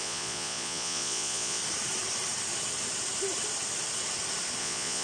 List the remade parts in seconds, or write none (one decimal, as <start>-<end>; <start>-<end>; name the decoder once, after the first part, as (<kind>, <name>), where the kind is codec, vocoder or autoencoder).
0.0-1.6 (vocoder, Vocos); 4.6-5.0